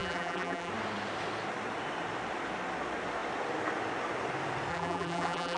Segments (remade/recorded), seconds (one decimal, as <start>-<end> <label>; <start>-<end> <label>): 0.0-0.7 remade; 0.7-4.7 recorded; 4.7-5.6 remade

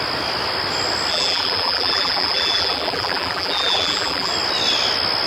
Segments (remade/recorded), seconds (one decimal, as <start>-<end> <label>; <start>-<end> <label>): 0.0-1.1 recorded; 1.1-4.3 remade; 4.3-5.3 recorded

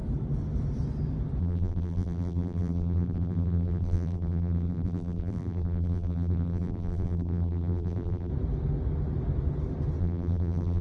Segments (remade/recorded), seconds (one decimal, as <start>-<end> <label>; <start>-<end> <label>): 0.0-1.4 recorded; 1.4-8.3 remade; 8.3-10.0 recorded; 10.0-10.8 remade

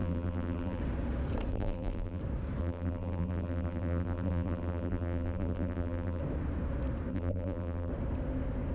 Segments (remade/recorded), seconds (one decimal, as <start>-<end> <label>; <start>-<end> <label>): 0.0-0.8 remade; 0.8-1.5 recorded; 1.5-2.2 remade; 2.2-2.6 recorded; 2.6-6.2 remade; 6.2-7.1 recorded; 7.1-7.9 remade; 7.9-8.7 recorded

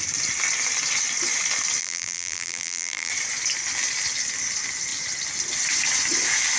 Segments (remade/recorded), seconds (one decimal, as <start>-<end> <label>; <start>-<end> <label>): 0.0-1.8 recorded; 1.8-3.1 remade; 3.1-6.6 recorded

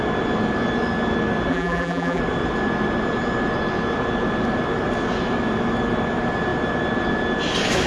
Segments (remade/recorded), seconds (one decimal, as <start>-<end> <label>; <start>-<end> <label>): 0.0-1.5 recorded; 1.5-2.2 remade; 2.2-7.9 recorded

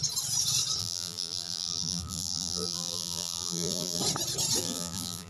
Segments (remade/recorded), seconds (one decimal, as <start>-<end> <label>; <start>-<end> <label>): 0.0-0.8 recorded; 0.8-4.0 remade; 4.0-4.6 recorded; 4.6-5.3 remade

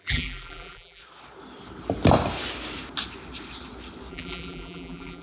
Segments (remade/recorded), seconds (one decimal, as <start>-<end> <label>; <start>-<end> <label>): 0.0-1.0 remade; 1.0-4.1 recorded; 4.1-5.2 remade